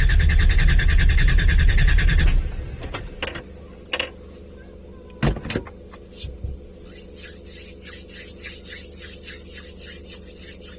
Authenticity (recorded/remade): recorded